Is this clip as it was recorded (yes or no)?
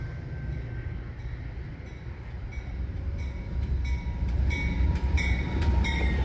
yes